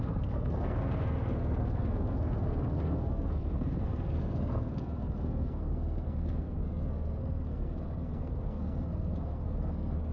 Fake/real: fake